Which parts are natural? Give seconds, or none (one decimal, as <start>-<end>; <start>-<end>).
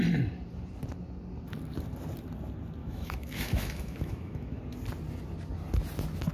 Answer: 0.0-2.8; 4.6-6.3